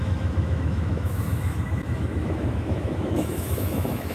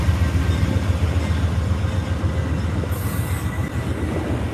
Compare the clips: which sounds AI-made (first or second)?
first